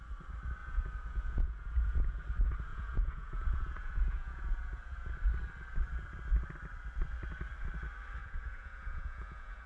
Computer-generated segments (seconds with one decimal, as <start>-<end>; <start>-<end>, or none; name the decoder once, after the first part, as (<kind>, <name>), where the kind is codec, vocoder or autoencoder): 0.6-2.1 (vocoder, Vocos); 2.7-5.1; 8.2-9.7